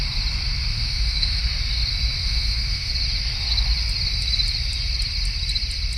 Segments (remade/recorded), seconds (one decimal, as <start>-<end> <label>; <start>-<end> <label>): 0.0-0.7 recorded; 0.7-1.4 remade; 1.4-2.2 recorded; 2.2-2.9 remade; 2.9-6.0 recorded